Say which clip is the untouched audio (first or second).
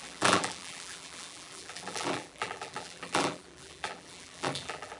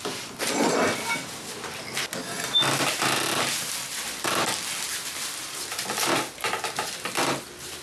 second